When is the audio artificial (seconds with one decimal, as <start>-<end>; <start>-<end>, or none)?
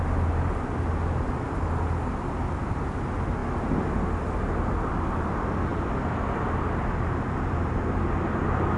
none